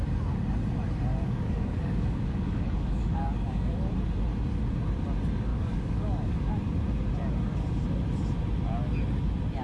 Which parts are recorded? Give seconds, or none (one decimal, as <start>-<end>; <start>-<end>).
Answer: 0.0-1.1; 3.9-5.5; 6.5-9.6